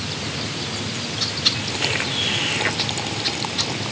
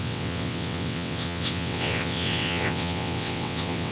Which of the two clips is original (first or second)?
first